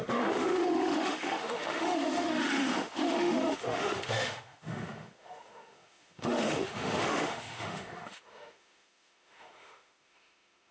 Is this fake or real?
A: fake